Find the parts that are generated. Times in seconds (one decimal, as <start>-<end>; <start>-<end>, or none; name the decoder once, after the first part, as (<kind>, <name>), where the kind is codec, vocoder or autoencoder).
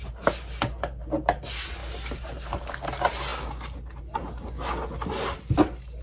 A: none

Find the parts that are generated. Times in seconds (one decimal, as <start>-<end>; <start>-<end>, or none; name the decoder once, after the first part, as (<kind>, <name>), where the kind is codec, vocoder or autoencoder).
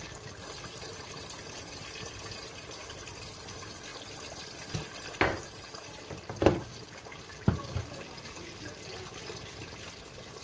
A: none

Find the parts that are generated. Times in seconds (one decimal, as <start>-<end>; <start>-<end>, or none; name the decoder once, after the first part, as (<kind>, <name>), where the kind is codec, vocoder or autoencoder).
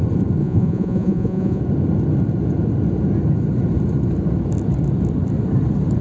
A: 0.4-1.6 (vocoder, Vocos)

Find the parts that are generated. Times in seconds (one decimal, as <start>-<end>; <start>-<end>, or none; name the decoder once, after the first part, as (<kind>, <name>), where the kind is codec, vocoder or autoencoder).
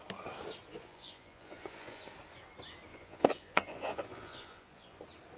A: 0.7-2.0 (vocoder, Vocos); 2.9-5.0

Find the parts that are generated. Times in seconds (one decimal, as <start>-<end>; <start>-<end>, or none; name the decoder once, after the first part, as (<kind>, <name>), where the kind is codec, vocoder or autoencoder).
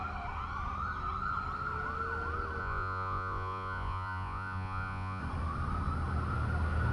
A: 2.6-5.2 (vocoder, Vocos)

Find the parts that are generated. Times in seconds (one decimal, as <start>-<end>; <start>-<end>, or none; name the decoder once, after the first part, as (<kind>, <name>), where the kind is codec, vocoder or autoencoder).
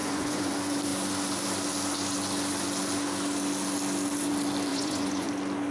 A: 0.0-0.5 (vocoder, Vocos); 4.7-5.3